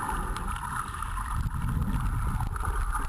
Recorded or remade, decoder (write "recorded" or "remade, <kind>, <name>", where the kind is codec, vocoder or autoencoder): recorded